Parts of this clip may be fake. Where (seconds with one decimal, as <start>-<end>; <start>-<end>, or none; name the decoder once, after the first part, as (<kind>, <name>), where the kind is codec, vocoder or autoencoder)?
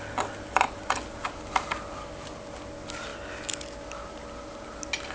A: none